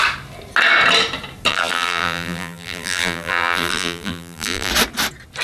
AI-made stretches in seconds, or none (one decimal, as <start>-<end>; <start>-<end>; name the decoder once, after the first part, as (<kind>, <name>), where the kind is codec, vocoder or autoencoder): 1.5-4.7 (vocoder, BigVGAN v2)